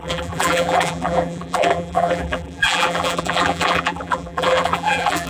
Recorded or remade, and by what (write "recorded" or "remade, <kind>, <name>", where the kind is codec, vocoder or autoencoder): remade, vocoder, BigVGAN v2